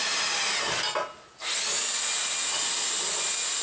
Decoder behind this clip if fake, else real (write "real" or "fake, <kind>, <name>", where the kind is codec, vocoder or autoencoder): real